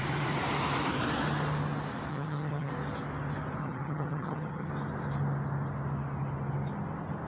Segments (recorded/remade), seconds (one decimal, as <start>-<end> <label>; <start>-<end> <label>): 0.0-2.1 recorded; 2.1-2.7 remade; 2.7-3.6 recorded; 3.6-4.7 remade; 4.7-7.3 recorded